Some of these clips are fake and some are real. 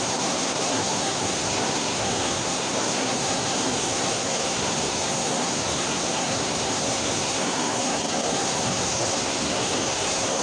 fake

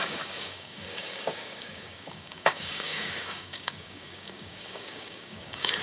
fake